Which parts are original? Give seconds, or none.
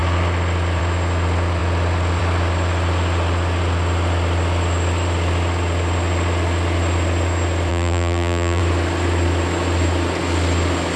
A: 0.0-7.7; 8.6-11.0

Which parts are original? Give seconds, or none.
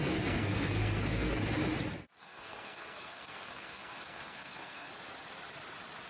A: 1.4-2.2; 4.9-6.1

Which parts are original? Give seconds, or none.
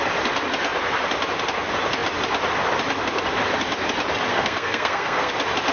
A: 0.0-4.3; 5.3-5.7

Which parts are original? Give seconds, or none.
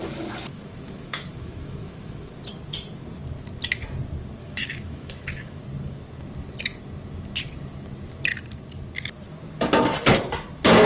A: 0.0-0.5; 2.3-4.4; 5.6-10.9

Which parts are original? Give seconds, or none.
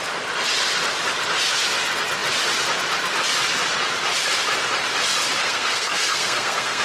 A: 0.0-5.4